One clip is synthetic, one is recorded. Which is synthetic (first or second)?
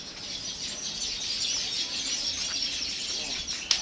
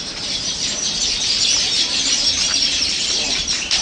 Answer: second